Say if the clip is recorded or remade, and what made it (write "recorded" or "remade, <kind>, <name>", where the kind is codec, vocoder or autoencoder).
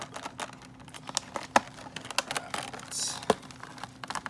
recorded